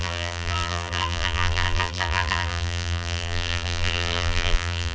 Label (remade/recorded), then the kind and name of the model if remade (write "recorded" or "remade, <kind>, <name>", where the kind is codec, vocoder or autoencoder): remade, vocoder, BigVGAN v2